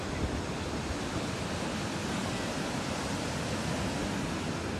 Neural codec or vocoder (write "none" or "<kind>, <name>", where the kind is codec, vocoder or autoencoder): none